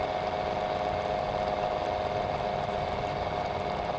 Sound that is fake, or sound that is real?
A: real